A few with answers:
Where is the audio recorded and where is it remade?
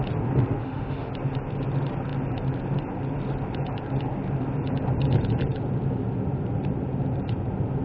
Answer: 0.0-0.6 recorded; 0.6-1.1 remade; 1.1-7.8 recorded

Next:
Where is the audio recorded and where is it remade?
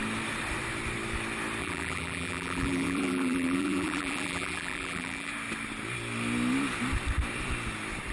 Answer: 0.0-1.6 recorded; 1.6-5.3 remade; 5.3-8.1 recorded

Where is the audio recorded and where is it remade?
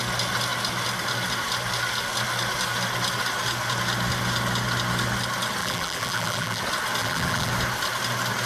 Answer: 0.0-5.6 recorded; 5.6-6.6 remade; 6.6-7.0 recorded; 7.0-7.5 remade; 7.5-8.5 recorded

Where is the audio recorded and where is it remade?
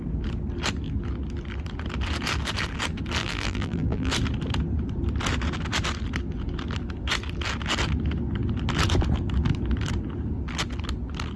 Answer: 0.0-3.2 recorded; 3.2-4.1 remade; 4.1-11.4 recorded